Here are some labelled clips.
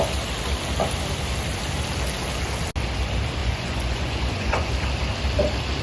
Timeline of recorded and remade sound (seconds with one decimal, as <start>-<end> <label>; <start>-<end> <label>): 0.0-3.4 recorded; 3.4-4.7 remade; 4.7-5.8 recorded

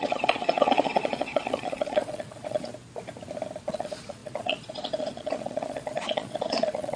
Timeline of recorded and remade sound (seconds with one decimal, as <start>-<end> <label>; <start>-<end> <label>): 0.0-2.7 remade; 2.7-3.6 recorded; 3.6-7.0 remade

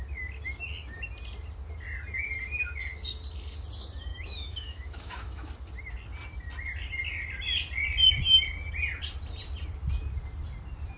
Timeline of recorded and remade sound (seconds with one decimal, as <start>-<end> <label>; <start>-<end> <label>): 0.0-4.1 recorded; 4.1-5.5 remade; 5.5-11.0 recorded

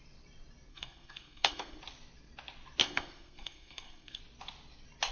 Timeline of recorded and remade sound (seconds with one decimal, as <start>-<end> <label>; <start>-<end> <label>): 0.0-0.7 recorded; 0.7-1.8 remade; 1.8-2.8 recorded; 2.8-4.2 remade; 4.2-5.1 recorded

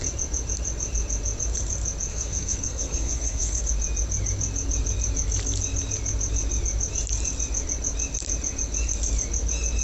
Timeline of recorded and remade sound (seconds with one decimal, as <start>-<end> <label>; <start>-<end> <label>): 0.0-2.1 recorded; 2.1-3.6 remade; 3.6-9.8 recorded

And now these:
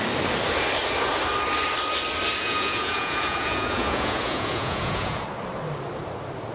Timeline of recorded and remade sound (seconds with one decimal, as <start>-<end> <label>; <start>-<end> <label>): 0.0-2.4 recorded; 2.4-5.2 remade; 5.2-6.5 recorded

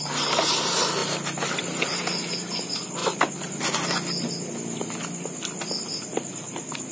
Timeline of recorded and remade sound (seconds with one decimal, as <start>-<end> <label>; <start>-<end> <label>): 0.0-6.9 recorded